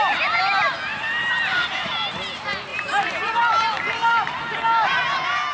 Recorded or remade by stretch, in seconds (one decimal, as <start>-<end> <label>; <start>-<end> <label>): 0.0-0.9 recorded; 0.9-1.9 remade; 1.9-2.7 recorded; 2.7-4.6 remade; 4.6-5.5 recorded